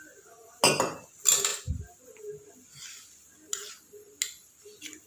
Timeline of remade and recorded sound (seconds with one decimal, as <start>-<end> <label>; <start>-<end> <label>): 0.0-5.1 recorded